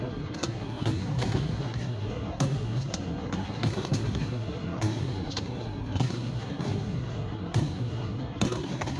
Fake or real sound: fake